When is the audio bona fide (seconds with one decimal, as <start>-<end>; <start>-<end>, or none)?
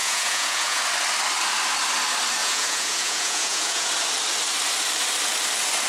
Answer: 0.8-2.4; 3.9-5.9